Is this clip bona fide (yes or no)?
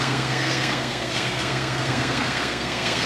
no